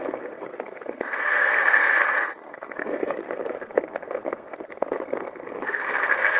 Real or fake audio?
fake